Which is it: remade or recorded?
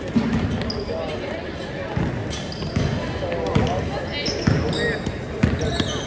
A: recorded